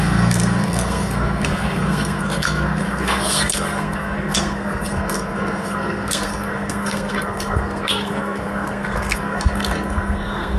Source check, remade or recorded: remade